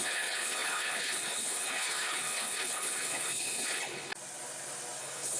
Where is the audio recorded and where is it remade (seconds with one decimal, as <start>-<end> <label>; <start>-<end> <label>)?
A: 0.0-4.1 remade; 4.1-5.0 recorded; 5.0-5.4 remade